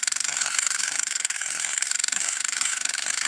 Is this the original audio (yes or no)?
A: no